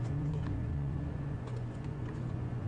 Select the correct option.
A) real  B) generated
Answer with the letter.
B